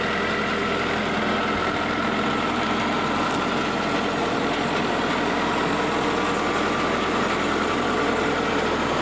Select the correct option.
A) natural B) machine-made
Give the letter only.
A